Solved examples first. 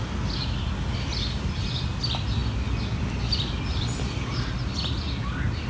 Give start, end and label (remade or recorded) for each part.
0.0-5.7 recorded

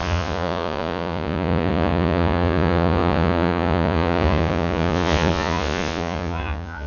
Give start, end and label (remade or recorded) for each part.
0.0-6.9 remade

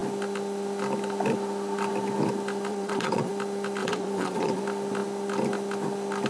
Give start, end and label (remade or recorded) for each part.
0.0-2.7 recorded; 2.7-3.3 remade; 3.3-3.8 recorded; 3.8-4.6 remade; 4.6-6.3 recorded

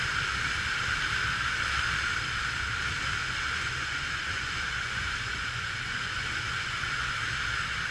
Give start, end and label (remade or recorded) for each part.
0.0-3.2 recorded; 3.2-7.1 remade; 7.1-7.9 recorded